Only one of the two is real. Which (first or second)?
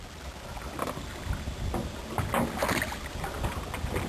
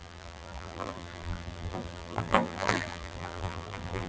first